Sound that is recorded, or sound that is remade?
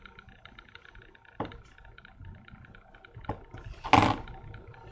recorded